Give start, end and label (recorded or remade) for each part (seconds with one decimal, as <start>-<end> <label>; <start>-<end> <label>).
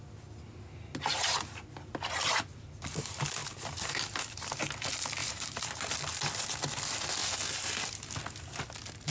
0.0-3.4 recorded; 3.4-4.0 remade; 4.0-5.2 recorded; 5.2-5.9 remade; 5.9-9.1 recorded